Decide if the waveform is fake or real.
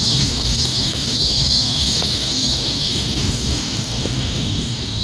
fake